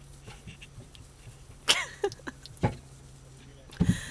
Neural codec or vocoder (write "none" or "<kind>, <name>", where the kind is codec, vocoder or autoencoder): none